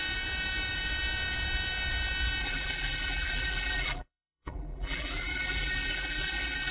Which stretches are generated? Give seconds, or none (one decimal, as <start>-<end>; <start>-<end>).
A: 2.4-6.7